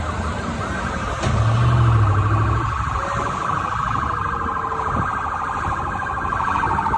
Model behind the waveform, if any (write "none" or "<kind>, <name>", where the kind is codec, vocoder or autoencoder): none